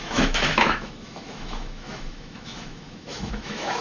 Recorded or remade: remade